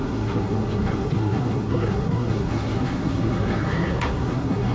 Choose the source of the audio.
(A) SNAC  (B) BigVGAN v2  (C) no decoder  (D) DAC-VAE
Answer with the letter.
A